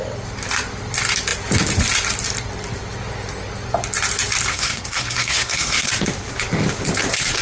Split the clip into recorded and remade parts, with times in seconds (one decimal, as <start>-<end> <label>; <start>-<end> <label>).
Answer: 0.0-4.5 recorded; 4.5-5.9 remade; 5.9-7.4 recorded